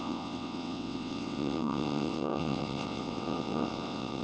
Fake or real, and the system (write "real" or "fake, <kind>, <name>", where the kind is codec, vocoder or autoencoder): fake, vocoder, WaveNeXt